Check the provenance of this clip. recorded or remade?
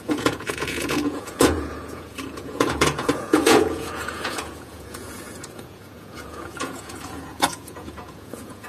remade